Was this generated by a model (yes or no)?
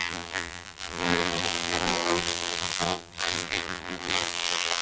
yes